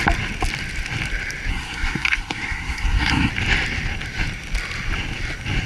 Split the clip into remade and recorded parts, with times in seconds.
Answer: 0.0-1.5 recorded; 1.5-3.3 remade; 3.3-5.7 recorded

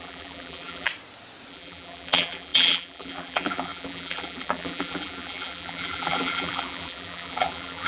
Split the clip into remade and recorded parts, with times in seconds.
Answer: 0.0-0.9 remade; 0.9-1.5 recorded; 1.5-7.9 remade

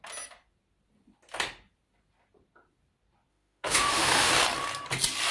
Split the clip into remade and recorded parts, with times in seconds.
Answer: 0.0-3.3 recorded; 3.3-4.3 remade; 4.3-5.3 recorded